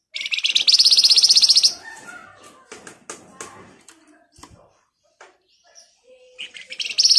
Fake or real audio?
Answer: real